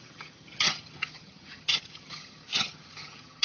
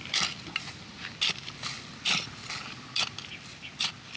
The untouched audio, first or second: second